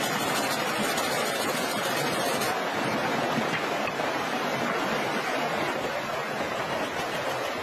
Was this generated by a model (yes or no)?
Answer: no